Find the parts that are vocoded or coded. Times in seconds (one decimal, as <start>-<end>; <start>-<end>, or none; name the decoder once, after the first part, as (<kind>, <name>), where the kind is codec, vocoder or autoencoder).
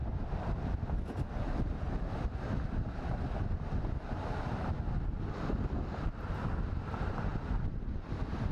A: none